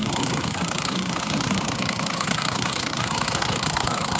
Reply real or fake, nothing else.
fake